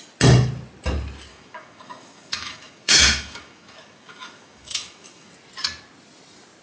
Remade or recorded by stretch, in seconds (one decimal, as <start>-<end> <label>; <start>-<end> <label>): 0.0-1.3 recorded; 1.3-5.3 remade; 5.3-6.6 recorded